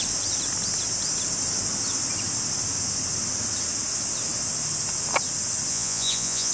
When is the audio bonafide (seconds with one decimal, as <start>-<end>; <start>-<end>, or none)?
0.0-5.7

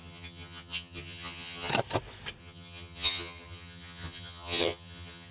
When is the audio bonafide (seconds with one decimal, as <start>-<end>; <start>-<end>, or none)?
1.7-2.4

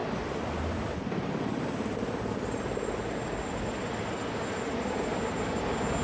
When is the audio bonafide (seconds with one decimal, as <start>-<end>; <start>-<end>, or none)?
0.0-6.0

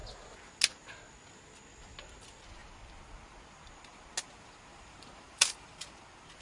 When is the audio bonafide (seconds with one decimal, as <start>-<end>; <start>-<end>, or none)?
0.0-4.7; 6.0-6.4

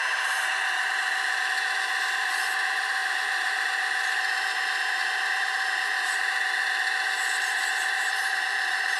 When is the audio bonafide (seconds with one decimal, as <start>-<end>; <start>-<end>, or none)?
none

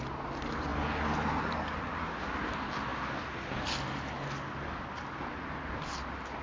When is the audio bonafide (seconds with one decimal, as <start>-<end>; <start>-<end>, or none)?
0.0-6.4

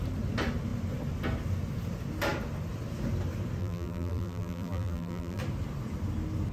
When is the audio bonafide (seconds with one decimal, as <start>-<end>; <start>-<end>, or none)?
0.0-3.6; 5.4-6.5